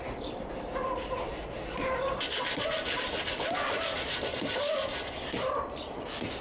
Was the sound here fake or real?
real